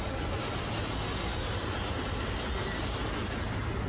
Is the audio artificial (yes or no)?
no